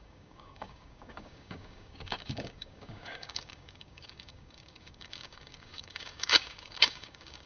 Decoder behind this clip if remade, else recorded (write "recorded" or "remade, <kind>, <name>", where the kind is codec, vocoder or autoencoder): remade, codec, DAC